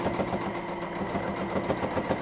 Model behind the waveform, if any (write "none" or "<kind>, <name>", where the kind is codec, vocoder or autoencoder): none